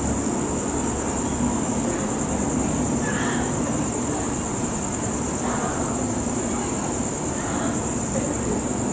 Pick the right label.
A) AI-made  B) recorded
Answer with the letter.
B